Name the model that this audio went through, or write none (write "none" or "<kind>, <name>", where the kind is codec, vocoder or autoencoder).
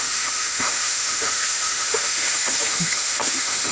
autoencoder, DAC-VAE